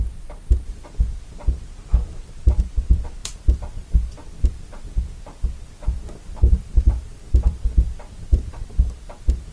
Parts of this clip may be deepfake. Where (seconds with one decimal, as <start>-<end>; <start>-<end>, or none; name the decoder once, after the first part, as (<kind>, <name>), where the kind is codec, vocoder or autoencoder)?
0.0-9.5 (vocoder, BigVGAN v2)